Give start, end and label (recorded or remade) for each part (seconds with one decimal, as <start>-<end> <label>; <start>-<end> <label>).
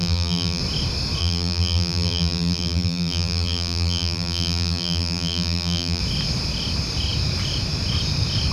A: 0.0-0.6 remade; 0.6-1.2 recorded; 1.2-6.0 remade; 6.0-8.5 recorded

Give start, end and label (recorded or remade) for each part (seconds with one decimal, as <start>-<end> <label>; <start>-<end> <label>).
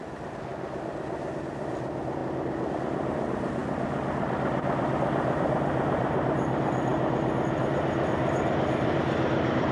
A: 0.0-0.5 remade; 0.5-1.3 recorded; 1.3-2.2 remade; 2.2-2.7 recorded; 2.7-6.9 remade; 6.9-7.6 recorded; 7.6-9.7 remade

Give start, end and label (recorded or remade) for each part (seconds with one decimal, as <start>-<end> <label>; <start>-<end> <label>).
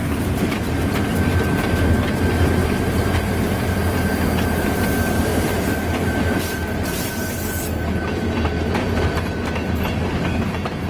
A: 0.0-2.1 remade; 2.1-2.6 recorded; 2.6-3.6 remade; 3.6-5.3 recorded; 5.3-7.6 remade; 7.6-8.8 recorded; 8.8-9.5 remade; 9.5-10.9 recorded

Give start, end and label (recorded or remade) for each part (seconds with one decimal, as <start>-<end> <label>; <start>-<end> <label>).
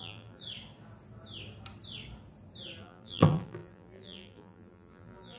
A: 0.0-0.4 remade; 0.4-2.8 recorded; 2.8-5.4 remade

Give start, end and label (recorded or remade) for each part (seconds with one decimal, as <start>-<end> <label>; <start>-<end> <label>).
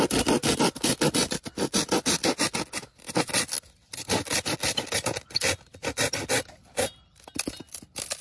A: 0.0-8.2 recorded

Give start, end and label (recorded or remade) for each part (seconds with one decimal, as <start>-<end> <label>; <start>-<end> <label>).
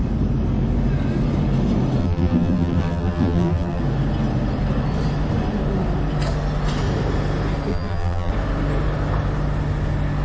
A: 0.0-2.0 recorded; 2.0-3.8 remade; 3.8-7.7 recorded; 7.7-8.3 remade; 8.3-10.2 recorded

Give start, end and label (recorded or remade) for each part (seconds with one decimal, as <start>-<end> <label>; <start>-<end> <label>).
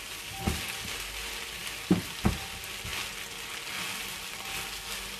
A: 0.0-5.2 recorded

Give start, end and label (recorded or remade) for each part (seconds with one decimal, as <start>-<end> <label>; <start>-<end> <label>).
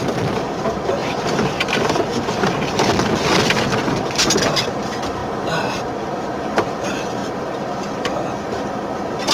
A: 0.0-1.0 recorded; 1.0-1.6 remade; 1.6-9.3 recorded